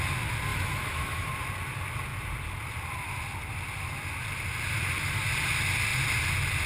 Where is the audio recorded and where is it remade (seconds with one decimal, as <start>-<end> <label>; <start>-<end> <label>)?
0.0-0.5 recorded; 0.5-1.3 remade; 1.3-6.7 recorded